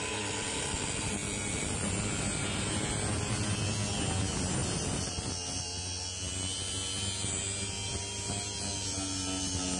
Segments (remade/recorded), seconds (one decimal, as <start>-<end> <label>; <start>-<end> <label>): 0.0-9.8 recorded